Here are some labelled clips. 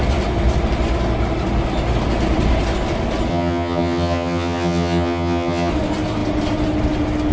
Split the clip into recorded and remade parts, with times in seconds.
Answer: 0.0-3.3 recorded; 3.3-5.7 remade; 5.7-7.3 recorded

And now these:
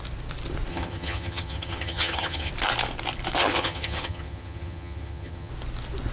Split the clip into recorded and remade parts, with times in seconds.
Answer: 0.0-0.7 recorded; 0.7-2.5 remade; 2.5-3.4 recorded; 3.4-5.5 remade; 5.5-6.1 recorded

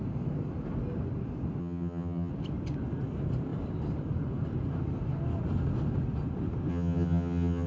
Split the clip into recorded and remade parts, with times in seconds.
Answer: 0.0-1.6 recorded; 1.6-2.3 remade; 2.3-6.7 recorded; 6.7-7.7 remade